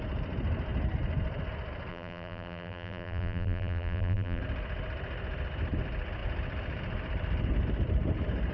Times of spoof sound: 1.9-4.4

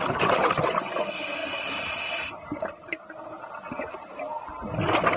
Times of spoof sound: none

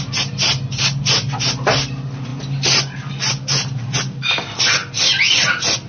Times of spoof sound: none

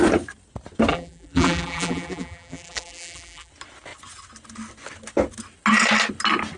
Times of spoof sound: 0.9-3.5

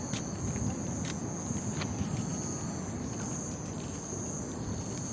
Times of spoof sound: none

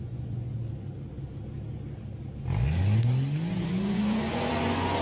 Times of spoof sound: 0.0-0.5; 3.5-5.0